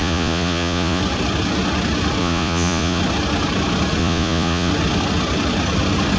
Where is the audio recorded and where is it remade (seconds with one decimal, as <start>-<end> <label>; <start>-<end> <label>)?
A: 0.0-1.0 remade; 1.0-2.2 recorded; 2.2-3.0 remade; 3.0-4.0 recorded; 4.0-4.7 remade; 4.7-6.2 recorded